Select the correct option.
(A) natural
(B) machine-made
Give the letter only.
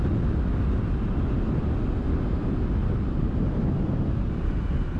A